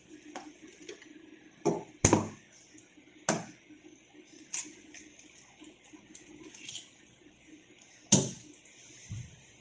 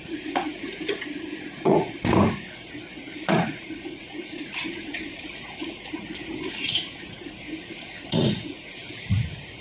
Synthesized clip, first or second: second